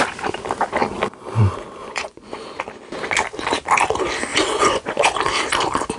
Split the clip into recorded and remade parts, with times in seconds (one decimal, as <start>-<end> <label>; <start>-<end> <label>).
0.0-1.8 recorded; 1.8-2.6 remade; 2.6-4.3 recorded; 4.3-5.2 remade; 5.2-6.0 recorded